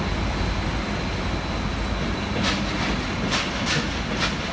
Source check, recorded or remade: recorded